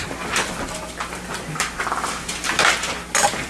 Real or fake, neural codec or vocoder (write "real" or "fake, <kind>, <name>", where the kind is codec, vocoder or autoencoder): real